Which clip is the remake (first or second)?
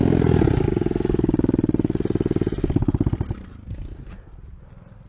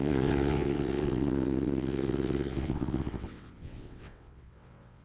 second